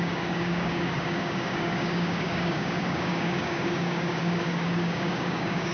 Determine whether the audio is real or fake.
fake